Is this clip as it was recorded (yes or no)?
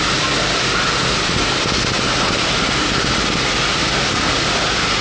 yes